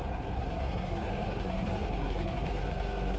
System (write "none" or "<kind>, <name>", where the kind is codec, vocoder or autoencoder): codec, SNAC